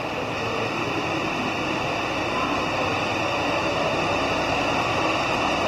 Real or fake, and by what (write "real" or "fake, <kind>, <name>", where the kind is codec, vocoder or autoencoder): real